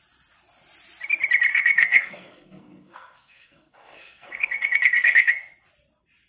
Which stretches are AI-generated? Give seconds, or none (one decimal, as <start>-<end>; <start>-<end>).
1.5-5.3